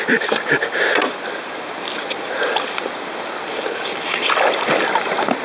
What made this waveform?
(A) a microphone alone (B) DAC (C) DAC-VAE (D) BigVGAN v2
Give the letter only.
A